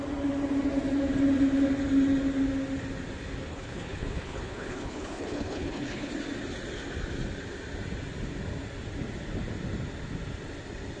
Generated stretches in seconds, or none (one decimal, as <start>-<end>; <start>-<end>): 3.5-6.1